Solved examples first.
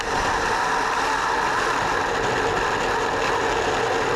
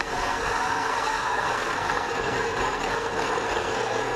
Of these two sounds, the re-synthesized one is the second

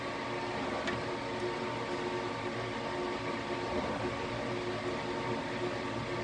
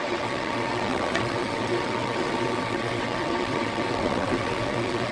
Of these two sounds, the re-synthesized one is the second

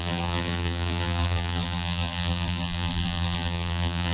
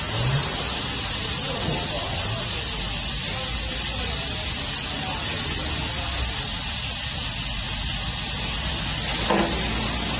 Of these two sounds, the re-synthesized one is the first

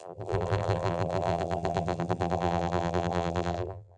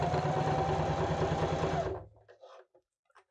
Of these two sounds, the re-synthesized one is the first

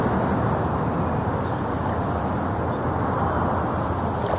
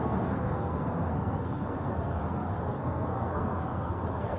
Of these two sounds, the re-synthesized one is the second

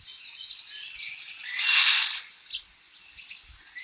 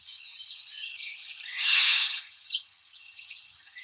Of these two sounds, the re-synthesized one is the second